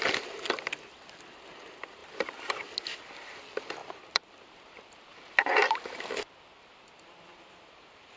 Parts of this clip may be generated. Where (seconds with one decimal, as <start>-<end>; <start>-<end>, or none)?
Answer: 2.0-2.6; 3.8-7.3